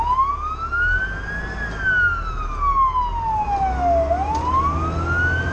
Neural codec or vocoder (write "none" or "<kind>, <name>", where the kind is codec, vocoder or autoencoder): none